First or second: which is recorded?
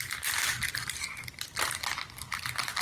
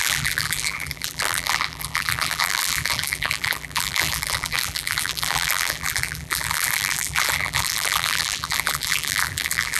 first